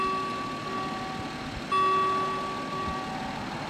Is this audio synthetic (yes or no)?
no